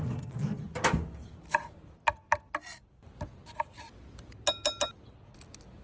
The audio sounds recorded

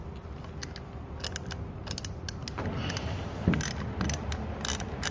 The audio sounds recorded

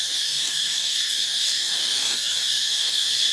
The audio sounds remade